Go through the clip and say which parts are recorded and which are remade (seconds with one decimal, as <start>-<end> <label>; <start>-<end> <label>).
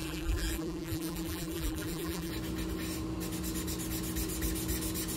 0.0-2.3 remade; 2.3-5.2 recorded